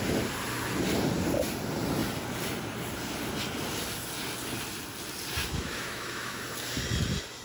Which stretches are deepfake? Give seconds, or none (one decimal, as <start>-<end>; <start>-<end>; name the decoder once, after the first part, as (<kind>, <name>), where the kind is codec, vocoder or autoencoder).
5.4-6.4 (autoencoder, DAC-VAE)